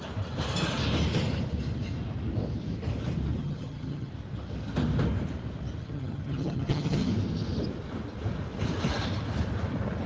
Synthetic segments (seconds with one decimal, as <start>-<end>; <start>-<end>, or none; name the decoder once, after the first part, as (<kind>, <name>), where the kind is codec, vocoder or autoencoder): 3.4-4.1 (vocoder, HiFi-GAN); 5.8-7.1